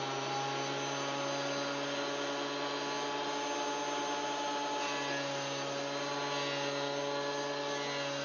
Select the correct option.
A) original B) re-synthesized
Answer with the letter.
A